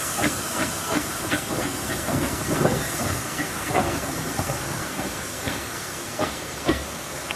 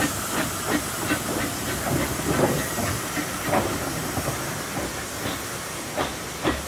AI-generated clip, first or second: first